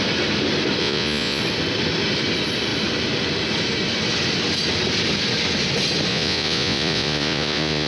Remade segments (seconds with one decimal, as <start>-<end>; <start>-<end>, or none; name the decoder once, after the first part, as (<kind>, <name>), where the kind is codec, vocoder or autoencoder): 0.8-1.4 (vocoder, Vocos); 6.1-7.9